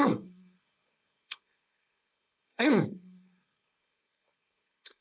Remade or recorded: remade